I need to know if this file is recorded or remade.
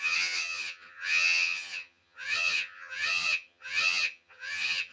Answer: remade